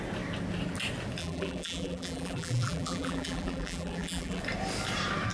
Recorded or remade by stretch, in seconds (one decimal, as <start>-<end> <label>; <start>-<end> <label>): 0.0-1.2 recorded; 1.2-4.4 remade; 4.4-5.3 recorded